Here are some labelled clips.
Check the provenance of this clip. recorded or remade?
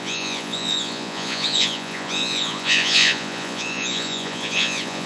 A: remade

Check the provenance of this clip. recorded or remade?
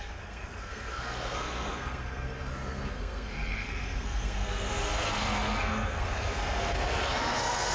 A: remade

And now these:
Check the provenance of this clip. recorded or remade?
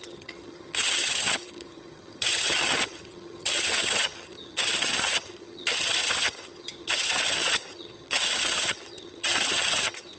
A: remade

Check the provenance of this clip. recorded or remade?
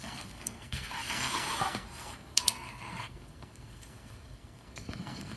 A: remade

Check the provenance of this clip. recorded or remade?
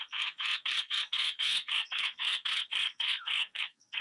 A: remade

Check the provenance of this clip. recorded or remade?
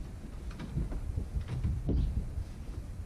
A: recorded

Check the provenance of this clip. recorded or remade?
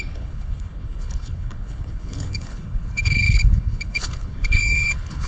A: remade